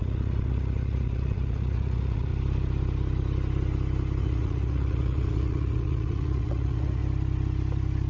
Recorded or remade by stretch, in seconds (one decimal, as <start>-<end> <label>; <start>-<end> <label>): 0.0-2.3 remade; 2.3-4.2 recorded; 4.2-7.0 remade; 7.0-8.1 recorded